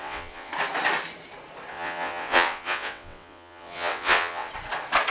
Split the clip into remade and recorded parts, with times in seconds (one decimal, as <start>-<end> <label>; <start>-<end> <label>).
0.0-0.5 remade; 0.5-1.7 recorded; 1.7-4.5 remade; 4.5-5.1 recorded